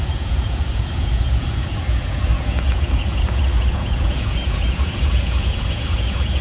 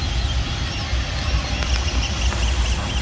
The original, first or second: second